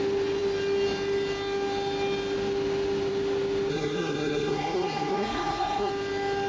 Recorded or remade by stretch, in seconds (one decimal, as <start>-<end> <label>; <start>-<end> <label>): 0.0-3.7 recorded; 3.7-5.9 remade; 5.9-6.5 recorded